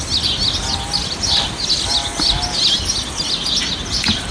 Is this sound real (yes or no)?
yes